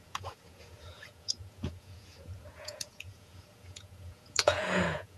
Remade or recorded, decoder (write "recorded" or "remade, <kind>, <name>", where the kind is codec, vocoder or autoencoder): remade, vocoder, Vocos